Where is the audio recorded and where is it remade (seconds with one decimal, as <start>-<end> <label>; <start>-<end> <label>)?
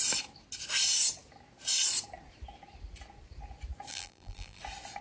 0.0-3.9 recorded; 3.9-4.6 remade; 4.6-5.0 recorded